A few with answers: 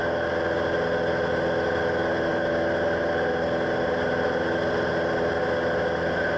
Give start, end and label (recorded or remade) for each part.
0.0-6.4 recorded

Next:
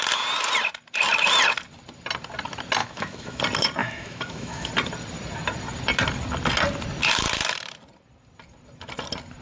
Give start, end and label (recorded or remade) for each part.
0.0-2.8 recorded; 2.8-3.4 remade; 3.4-3.8 recorded; 3.8-4.7 remade; 4.7-9.4 recorded

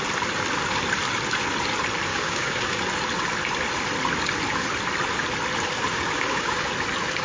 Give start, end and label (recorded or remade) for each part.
0.0-2.1 recorded; 2.1-2.8 remade; 2.8-5.9 recorded; 5.9-6.7 remade; 6.7-7.2 recorded

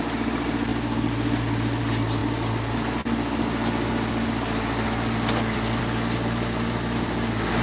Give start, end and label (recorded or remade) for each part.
0.0-7.6 recorded

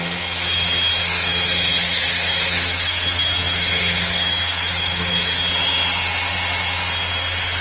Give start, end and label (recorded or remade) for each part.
0.0-1.0 recorded; 1.0-5.4 remade; 5.4-7.6 recorded

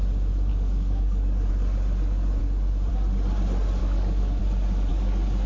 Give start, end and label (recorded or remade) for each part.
0.0-0.5 recorded; 0.5-1.5 remade; 1.5-3.8 recorded; 3.8-4.4 remade; 4.4-4.9 recorded; 4.9-5.5 remade